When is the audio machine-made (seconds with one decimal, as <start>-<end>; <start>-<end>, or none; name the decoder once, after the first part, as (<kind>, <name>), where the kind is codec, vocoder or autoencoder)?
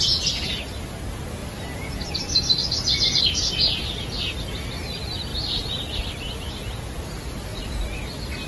1.4-3.2 (vocoder, BigVGAN v2)